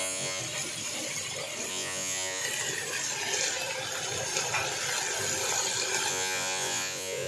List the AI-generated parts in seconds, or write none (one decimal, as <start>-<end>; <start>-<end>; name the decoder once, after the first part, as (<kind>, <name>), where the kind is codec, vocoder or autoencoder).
0.0-0.4 (vocoder, Vocos); 1.7-2.4; 6.1-7.3